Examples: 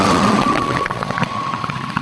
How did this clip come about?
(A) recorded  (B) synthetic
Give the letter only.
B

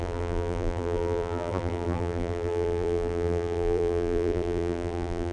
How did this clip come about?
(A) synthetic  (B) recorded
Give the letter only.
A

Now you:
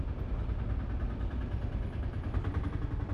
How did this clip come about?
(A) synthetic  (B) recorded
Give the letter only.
B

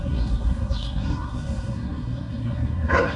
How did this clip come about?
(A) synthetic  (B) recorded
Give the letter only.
A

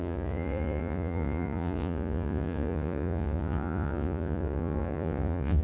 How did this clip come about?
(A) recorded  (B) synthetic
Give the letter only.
B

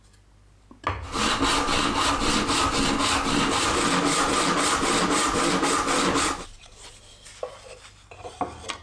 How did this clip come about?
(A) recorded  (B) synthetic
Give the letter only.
A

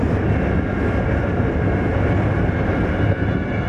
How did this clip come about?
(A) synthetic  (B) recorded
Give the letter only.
B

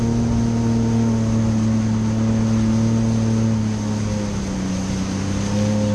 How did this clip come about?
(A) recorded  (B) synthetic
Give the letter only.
A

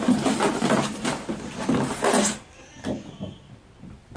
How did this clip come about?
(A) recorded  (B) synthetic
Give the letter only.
A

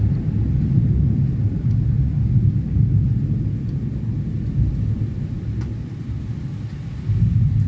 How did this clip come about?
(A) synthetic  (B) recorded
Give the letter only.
B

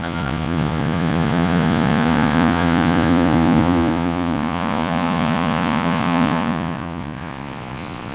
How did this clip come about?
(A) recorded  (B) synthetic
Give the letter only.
B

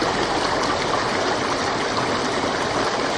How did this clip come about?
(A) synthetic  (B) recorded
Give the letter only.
B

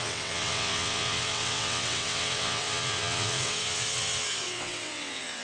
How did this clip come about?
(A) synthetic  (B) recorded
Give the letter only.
A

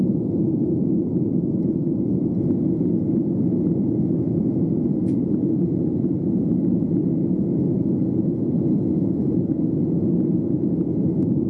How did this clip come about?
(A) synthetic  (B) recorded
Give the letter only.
B